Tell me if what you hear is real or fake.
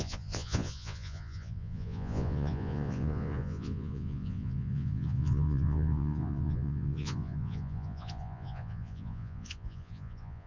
fake